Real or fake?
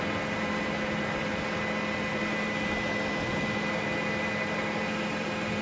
real